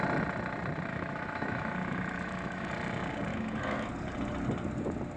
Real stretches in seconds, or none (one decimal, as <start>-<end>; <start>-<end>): 0.0-0.9; 2.7-3.3; 3.9-5.2